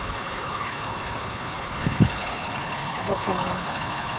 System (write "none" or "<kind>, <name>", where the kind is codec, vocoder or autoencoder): codec, HILCodec